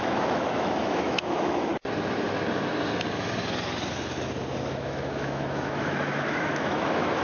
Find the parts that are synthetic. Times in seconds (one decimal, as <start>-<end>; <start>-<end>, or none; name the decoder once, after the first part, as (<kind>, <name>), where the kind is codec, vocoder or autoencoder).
0.0-1.7 (autoencoder, DAC-VAE); 4.7-7.2